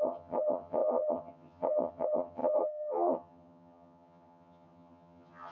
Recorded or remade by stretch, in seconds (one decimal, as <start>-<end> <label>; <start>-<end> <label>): 0.0-5.5 remade